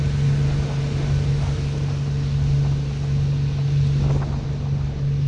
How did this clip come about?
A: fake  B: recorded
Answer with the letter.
B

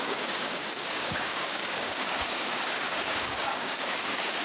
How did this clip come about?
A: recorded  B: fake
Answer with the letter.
B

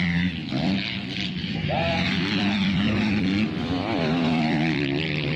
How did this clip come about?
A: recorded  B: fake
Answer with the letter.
B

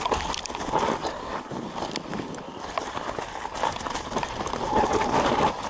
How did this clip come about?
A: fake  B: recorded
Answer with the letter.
B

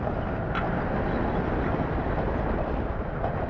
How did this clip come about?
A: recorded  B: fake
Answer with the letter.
A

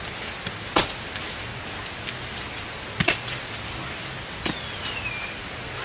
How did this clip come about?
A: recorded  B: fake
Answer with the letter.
A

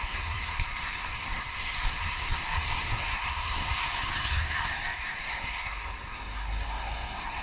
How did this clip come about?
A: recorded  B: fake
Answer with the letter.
B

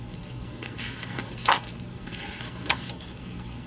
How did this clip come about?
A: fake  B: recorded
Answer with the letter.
A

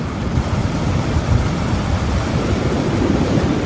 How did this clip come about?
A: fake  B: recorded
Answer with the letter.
A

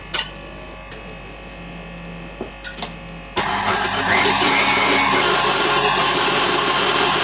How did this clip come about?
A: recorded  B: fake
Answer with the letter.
A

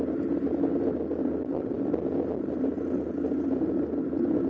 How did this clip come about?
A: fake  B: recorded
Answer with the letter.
B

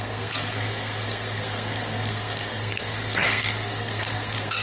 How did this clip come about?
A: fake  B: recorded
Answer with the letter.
A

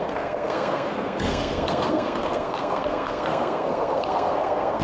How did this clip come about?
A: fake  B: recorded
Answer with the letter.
A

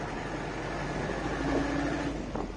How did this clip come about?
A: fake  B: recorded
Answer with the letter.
B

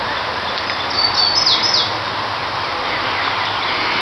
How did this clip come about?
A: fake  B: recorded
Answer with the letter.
B